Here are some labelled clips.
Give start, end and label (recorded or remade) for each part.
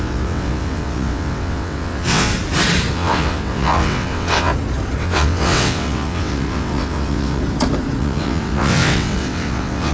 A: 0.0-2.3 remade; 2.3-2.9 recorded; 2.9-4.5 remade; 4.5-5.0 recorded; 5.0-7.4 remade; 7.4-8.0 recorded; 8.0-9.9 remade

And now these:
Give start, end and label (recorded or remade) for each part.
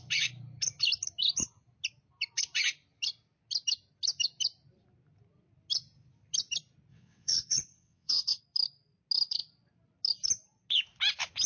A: 0.0-6.9 recorded; 6.9-8.4 remade; 8.4-11.5 recorded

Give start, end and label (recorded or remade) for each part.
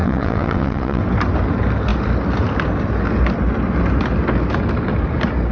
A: 0.0-1.0 remade; 1.0-5.5 recorded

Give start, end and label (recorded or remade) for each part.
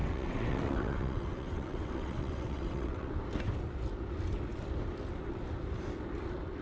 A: 0.0-3.1 remade; 3.1-6.6 recorded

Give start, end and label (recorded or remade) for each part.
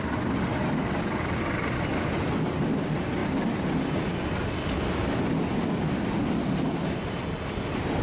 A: 0.0-8.0 recorded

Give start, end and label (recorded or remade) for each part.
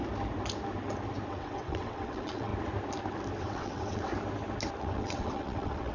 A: 0.0-1.3 recorded; 1.3-2.5 remade; 2.5-3.4 recorded; 3.4-4.1 remade; 4.1-4.8 recorded; 4.8-5.9 remade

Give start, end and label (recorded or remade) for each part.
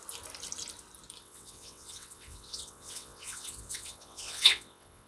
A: 0.0-1.2 recorded; 1.2-5.1 remade